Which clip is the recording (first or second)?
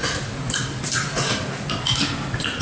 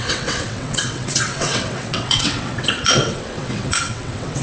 first